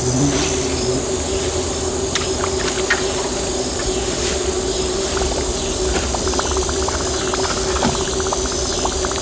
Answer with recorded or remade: recorded